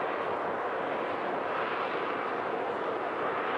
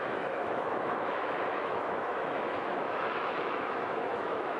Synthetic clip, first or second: second